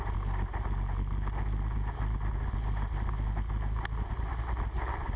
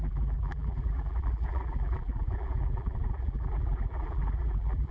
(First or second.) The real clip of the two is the first